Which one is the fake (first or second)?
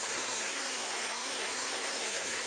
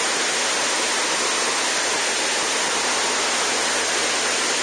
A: first